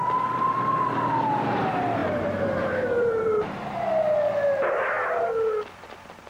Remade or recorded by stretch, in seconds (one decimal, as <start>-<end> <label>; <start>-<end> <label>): 0.0-2.0 recorded; 2.0-3.8 remade; 3.8-6.3 recorded